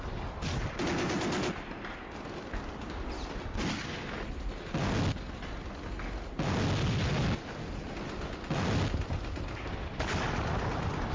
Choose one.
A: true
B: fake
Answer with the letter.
A